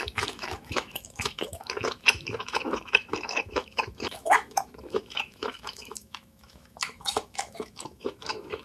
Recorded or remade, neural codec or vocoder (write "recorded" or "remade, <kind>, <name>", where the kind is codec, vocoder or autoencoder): remade, autoencoder, DAC-VAE